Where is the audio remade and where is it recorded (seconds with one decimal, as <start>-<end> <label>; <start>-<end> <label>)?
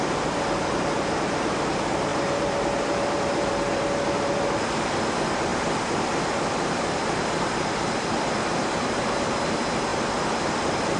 0.0-2.1 recorded; 2.1-4.3 remade; 4.3-5.5 recorded; 5.5-9.3 remade; 9.3-11.0 recorded